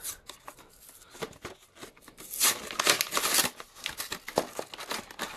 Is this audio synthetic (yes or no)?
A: no